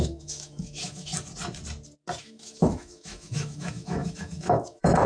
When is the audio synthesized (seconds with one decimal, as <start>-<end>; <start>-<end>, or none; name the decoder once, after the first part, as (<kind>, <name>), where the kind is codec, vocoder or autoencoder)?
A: 0.0-1.1 (autoencoder, DAC-VAE); 2.2-5.1